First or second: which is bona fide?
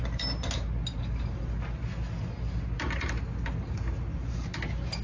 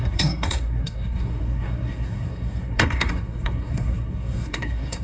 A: first